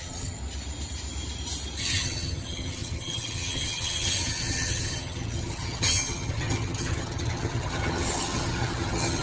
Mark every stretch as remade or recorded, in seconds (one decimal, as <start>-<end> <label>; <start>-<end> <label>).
0.0-0.4 remade; 0.4-1.8 recorded; 1.8-9.2 remade